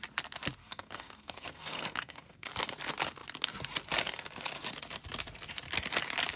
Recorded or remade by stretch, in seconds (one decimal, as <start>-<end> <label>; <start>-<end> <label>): 0.0-0.6 recorded; 0.6-2.5 remade; 2.5-6.4 recorded